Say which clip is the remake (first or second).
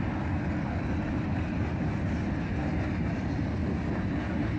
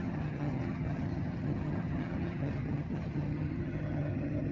second